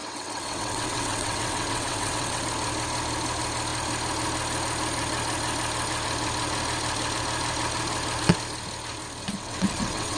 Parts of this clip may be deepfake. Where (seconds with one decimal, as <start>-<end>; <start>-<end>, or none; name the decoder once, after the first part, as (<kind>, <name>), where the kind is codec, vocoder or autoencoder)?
0.0-2.4 (vocoder, WaveNeXt); 9.2-10.2